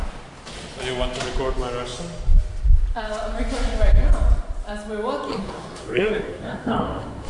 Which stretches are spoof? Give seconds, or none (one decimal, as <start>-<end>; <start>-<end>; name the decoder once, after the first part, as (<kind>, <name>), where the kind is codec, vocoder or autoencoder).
5.3-7.3 (codec, SNAC)